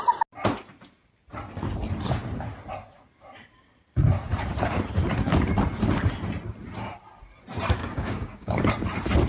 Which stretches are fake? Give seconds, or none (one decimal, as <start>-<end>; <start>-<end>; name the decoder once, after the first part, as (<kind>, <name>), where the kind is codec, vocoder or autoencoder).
7.8-8.7 (codec, DAC)